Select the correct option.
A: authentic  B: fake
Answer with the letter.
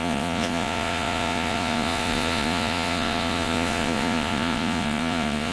B